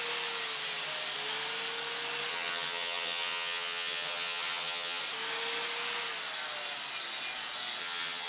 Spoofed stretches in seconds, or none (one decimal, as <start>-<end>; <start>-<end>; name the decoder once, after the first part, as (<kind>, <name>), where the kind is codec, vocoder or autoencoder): 2.3-5.0 (vocoder, HiFi-GAN); 7.8-8.3

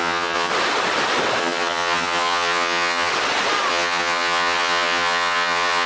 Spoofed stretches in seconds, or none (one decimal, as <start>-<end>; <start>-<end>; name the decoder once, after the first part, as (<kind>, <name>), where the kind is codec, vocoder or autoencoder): 0.0-0.5 (vocoder, HiFi-GAN); 1.4-3.1; 3.7-5.9

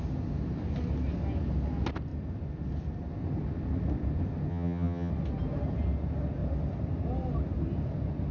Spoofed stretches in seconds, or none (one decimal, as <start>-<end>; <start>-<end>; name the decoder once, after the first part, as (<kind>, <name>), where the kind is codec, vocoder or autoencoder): 4.5-5.1 (vocoder, HiFi-GAN)

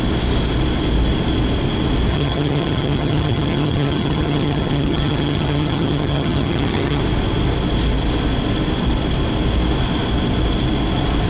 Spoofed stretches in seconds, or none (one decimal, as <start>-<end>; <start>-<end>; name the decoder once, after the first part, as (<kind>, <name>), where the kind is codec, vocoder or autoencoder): 2.1-7.0 (vocoder, HiFi-GAN)

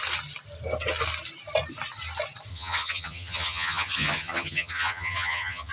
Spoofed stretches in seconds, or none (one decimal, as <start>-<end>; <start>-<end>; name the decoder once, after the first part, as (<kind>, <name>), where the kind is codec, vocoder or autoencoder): 2.5-5.7 (vocoder, HiFi-GAN)